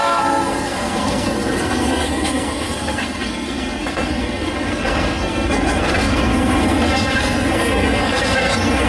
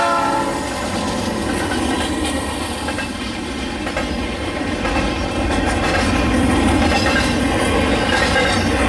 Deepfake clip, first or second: first